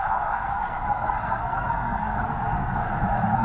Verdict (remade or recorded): remade